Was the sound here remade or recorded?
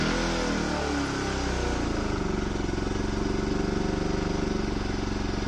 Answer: recorded